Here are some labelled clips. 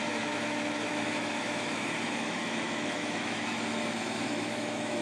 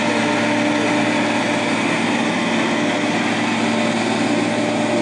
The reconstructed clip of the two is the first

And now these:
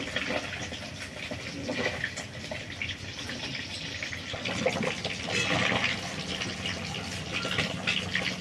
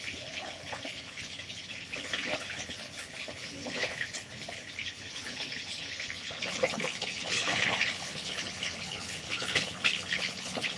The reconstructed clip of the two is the second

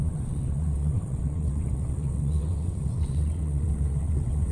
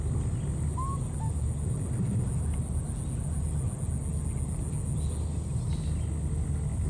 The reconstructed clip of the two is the first